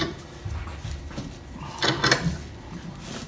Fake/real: real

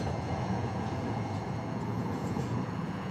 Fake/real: fake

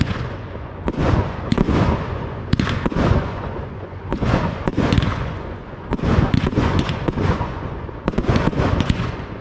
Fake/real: fake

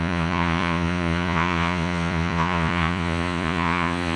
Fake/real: fake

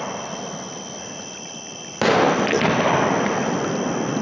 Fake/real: real